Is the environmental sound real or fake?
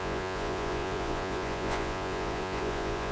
fake